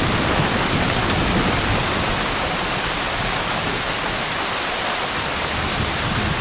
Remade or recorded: recorded